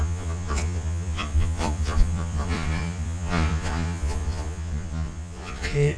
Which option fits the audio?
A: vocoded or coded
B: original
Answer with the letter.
A